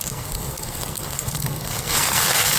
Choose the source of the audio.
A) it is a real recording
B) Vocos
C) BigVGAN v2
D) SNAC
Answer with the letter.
D